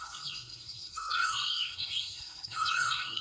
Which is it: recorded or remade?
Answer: remade